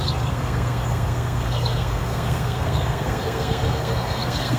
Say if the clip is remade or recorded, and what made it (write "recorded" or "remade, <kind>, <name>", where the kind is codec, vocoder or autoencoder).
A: remade, codec, SNAC